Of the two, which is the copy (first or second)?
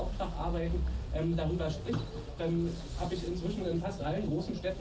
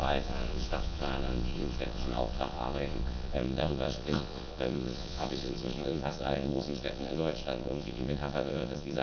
second